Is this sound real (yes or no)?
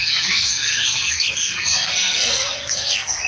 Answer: no